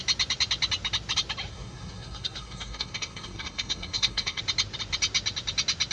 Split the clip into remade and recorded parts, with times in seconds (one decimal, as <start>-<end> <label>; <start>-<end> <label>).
0.0-1.5 recorded; 1.5-4.4 remade; 4.4-5.9 recorded